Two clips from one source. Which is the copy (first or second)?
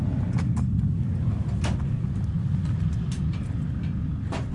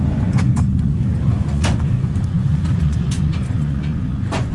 second